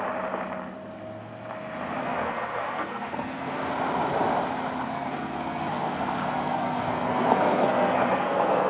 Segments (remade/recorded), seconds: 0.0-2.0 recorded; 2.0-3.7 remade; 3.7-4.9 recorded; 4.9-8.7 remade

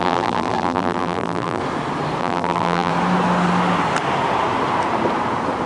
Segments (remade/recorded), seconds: 0.0-1.6 remade; 1.6-2.2 recorded; 2.2-2.9 remade; 2.9-5.7 recorded

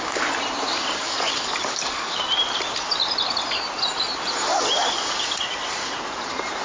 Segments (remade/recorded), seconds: 0.0-1.0 recorded; 1.0-2.2 remade; 2.2-6.6 recorded

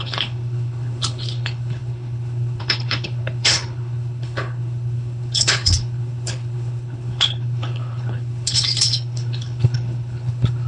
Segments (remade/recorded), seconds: 0.0-10.7 remade

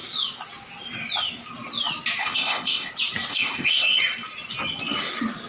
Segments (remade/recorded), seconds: 0.0-2.2 recorded; 2.2-2.9 remade; 2.9-3.3 recorded; 3.3-4.0 remade; 4.0-5.5 recorded